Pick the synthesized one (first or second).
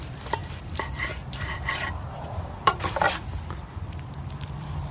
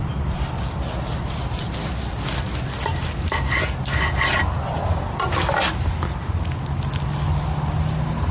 first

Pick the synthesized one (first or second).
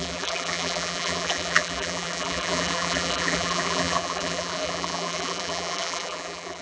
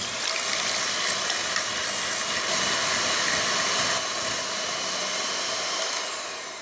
first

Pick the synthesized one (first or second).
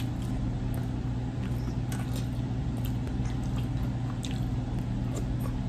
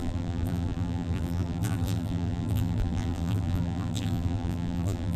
second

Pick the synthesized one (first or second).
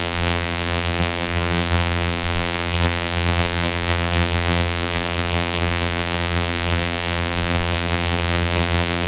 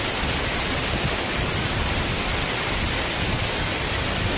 first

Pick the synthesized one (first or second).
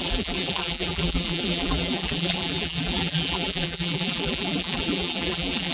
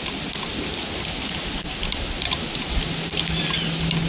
first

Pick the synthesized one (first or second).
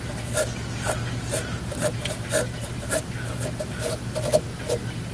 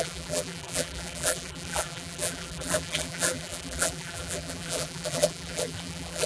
second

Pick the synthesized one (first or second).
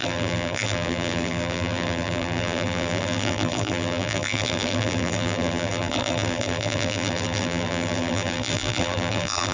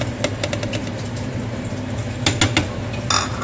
first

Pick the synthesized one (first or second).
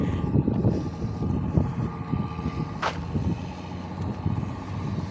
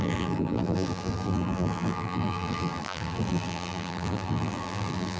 second